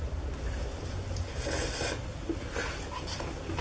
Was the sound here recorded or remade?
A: recorded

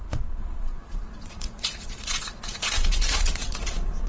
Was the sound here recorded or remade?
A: remade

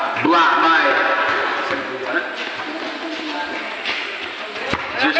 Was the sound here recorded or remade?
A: recorded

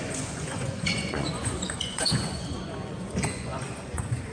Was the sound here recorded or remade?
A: remade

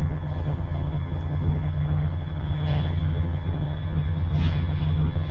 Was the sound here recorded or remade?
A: remade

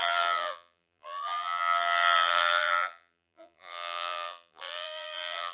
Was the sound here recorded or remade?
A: remade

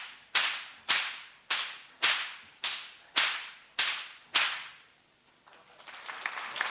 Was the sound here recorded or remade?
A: recorded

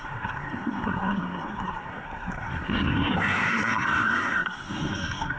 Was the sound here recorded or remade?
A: remade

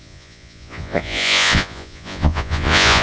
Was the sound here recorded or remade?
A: remade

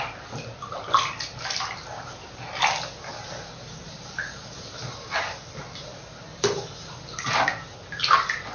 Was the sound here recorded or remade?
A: recorded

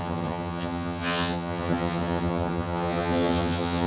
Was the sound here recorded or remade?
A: remade